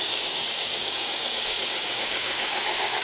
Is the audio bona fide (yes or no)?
no